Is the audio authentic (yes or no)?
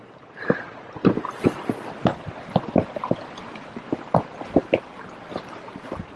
yes